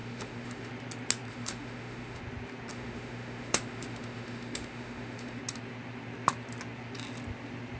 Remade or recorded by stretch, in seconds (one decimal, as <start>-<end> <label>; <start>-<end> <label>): 0.0-0.7 remade; 0.7-1.3 recorded; 1.3-2.2 remade; 2.2-2.7 recorded; 2.7-5.4 remade; 5.4-7.8 recorded